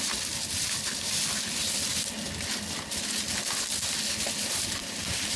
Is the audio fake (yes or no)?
no